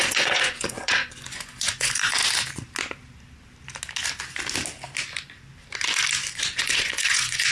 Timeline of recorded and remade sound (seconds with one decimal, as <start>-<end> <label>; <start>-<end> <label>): 0.0-2.2 remade; 2.2-6.3 recorded; 6.3-7.5 remade